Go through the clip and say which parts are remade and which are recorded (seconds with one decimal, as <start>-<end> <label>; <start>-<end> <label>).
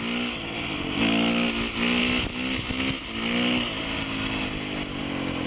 0.0-5.5 recorded